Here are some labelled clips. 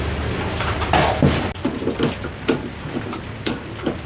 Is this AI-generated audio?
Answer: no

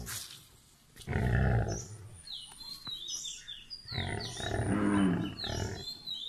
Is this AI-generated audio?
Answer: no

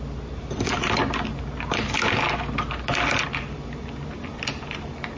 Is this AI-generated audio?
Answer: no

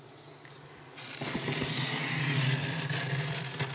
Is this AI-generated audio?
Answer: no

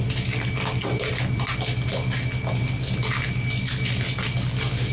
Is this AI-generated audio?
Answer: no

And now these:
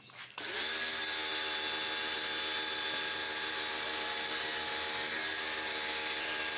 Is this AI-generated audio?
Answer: no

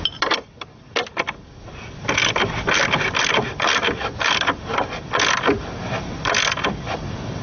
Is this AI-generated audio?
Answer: no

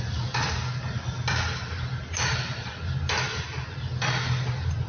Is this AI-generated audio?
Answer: no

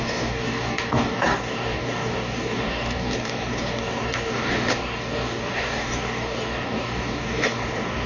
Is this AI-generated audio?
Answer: yes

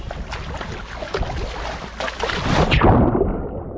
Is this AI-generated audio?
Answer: no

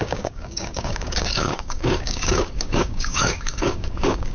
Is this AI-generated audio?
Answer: yes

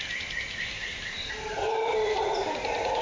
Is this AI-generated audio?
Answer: no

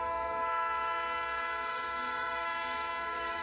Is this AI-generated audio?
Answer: yes